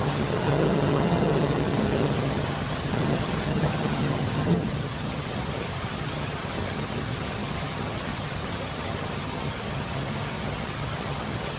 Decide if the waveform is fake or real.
fake